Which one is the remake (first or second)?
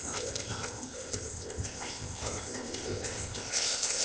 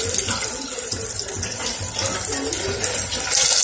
first